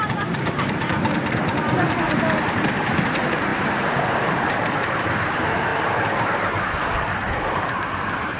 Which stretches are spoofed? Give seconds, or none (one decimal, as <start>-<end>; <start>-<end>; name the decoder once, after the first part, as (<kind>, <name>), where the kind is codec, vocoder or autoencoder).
0.0-5.7 (vocoder, BigVGAN v2); 7.5-8.4